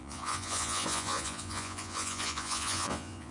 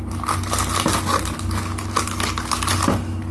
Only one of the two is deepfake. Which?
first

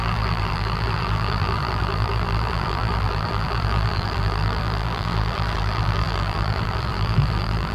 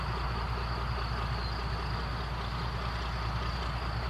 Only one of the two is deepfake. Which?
first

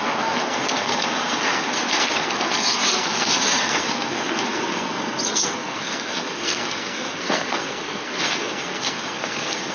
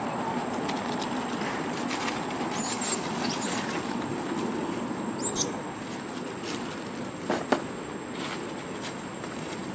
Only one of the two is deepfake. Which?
first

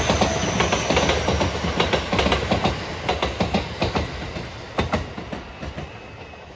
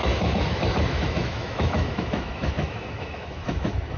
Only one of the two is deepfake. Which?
second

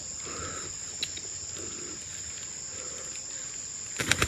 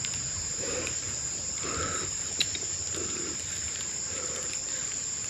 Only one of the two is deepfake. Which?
second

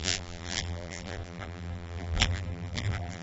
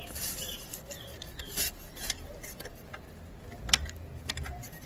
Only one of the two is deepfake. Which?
first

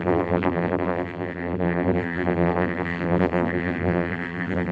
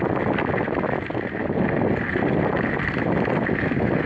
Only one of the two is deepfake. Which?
first